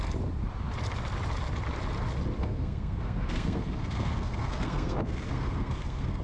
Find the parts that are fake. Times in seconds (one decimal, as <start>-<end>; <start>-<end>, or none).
2.4-6.2